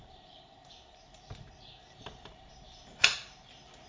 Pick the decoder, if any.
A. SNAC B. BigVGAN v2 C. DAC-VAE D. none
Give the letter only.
B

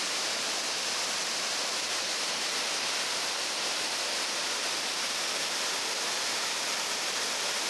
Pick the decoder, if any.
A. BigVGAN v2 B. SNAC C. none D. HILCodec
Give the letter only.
C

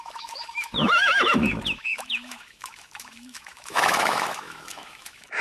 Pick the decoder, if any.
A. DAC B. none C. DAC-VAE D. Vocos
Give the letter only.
C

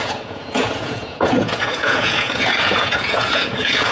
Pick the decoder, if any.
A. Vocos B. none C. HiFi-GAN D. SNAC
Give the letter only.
A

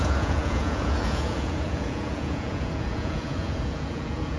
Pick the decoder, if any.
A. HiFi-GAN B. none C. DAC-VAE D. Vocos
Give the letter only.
D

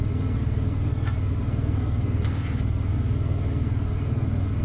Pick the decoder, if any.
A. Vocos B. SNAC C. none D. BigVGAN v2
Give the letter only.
B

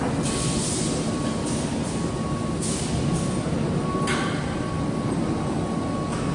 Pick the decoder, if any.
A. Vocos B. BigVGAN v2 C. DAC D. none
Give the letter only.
D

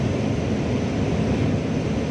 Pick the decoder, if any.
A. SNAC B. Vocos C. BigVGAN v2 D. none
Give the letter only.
D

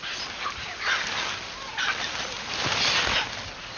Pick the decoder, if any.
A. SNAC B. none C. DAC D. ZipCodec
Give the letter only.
B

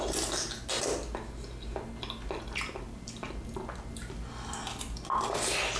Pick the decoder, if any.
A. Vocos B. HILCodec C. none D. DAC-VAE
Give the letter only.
C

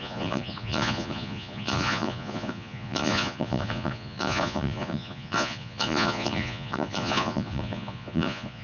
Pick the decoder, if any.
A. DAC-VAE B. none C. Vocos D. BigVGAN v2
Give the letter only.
C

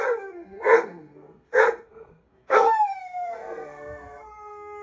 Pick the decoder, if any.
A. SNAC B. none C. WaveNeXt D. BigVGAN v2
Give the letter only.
A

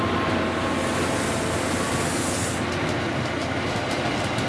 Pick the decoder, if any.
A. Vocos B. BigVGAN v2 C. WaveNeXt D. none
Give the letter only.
D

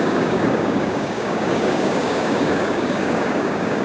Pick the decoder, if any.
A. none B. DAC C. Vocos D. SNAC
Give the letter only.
B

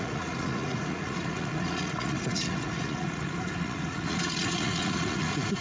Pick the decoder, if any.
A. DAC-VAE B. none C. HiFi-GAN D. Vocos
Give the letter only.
D